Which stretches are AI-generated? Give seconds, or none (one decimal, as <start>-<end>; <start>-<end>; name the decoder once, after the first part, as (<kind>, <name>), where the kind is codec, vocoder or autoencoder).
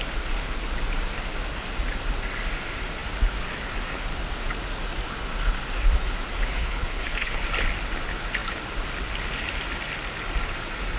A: 6.6-7.4 (codec, HILCodec)